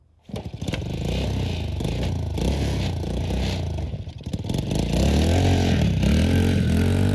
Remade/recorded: recorded